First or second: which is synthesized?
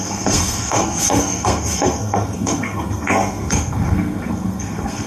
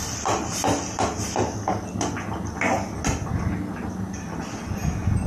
first